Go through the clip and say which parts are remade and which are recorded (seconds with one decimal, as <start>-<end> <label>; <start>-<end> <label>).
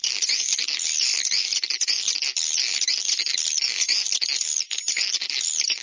0.0-5.8 recorded